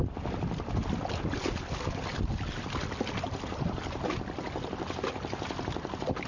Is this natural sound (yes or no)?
yes